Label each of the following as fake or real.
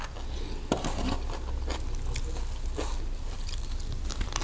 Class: real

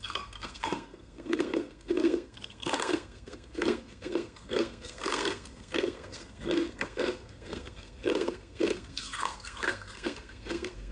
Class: fake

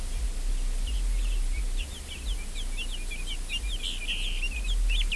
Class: real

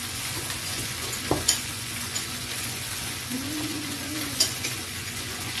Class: fake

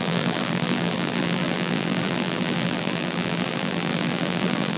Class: fake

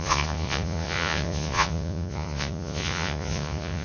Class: fake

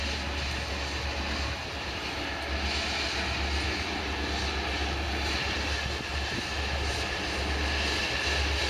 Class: real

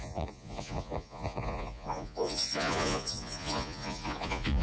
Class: fake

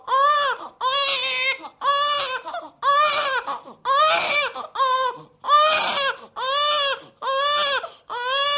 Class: real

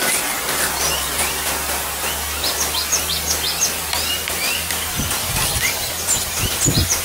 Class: real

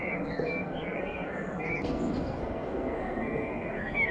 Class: fake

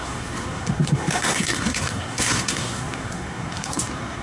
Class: fake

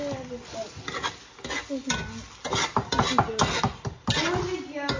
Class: real